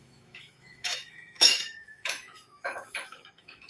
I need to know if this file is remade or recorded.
remade